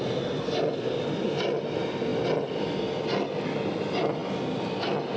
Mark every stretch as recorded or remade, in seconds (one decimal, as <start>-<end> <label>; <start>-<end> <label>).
0.0-5.2 recorded

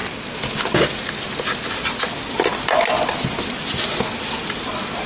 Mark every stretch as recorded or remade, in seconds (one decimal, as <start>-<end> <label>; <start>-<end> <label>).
0.0-5.1 recorded